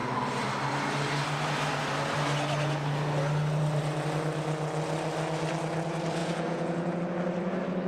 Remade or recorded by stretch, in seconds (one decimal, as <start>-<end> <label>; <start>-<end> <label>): 0.0-6.2 recorded; 6.2-7.0 remade; 7.0-7.9 recorded